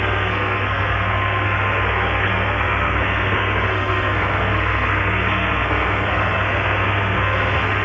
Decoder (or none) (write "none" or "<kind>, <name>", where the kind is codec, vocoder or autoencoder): codec, SNAC